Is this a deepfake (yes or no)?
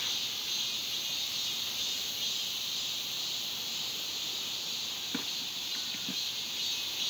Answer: yes